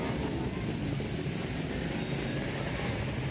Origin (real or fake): real